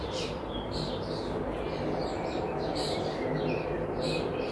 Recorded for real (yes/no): no